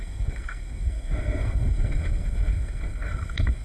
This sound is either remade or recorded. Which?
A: remade